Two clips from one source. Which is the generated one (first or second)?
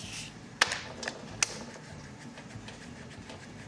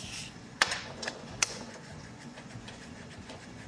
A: second